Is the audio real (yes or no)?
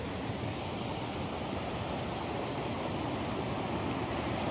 yes